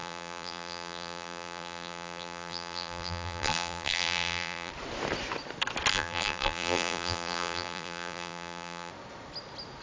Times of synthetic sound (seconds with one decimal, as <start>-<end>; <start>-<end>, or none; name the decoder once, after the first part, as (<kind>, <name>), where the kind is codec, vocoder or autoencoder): 0.0-4.7 (vocoder, BigVGAN v2); 5.9-8.9

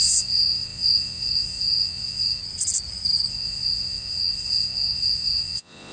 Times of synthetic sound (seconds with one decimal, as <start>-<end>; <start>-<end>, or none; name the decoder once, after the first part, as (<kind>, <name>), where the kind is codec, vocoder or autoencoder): 0.0-2.4 (vocoder, Vocos); 3.3-5.9

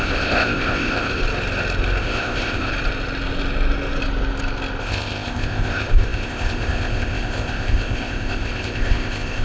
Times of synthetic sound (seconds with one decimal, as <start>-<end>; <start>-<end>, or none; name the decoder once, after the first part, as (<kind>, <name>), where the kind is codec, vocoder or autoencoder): 0.0-1.2 (codec, ZipCodec); 2.0-2.7; 4.8-9.4